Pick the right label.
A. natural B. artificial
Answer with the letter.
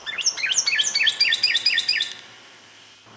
A